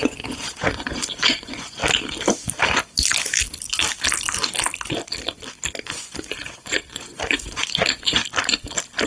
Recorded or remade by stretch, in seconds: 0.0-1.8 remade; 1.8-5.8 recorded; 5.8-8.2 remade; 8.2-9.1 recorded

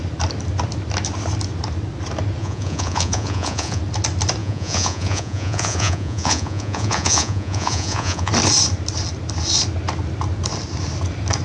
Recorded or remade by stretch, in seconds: 0.0-2.4 recorded; 2.4-3.8 remade; 3.8-4.4 recorded; 4.4-8.3 remade; 8.3-11.4 recorded

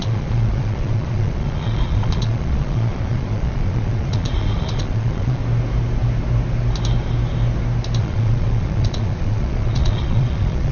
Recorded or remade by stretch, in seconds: 0.0-5.4 remade; 5.4-8.0 recorded; 8.0-10.7 remade

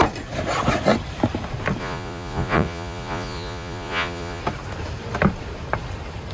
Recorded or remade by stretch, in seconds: 0.0-1.8 recorded; 1.8-4.4 remade; 4.4-6.3 recorded

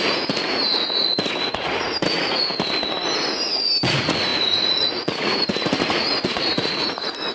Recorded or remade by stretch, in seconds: 0.0-2.5 remade; 2.5-3.9 recorded; 3.9-7.3 remade

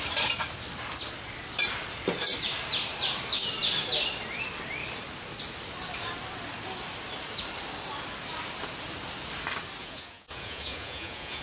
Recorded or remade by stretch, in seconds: 0.0-9.8 recorded; 9.8-11.4 remade

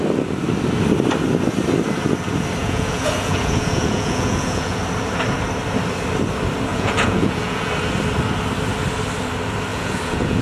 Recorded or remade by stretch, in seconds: 0.0-2.6 recorded; 2.6-4.8 remade; 4.8-6.7 recorded; 6.7-7.7 remade; 7.7-9.7 recorded; 9.7-10.4 remade